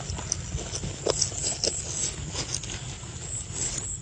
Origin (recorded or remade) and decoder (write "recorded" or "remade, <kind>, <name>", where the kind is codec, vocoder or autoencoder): recorded